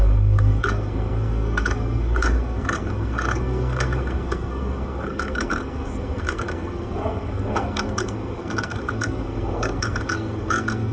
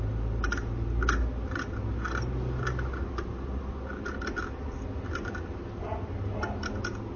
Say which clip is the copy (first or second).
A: first